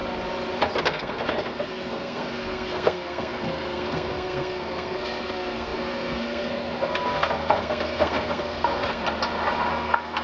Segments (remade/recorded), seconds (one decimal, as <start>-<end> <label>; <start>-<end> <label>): 0.0-0.8 recorded; 0.8-9.0 remade; 9.0-9.7 recorded; 9.7-10.2 remade